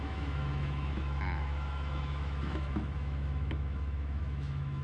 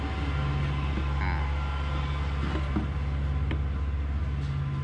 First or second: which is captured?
second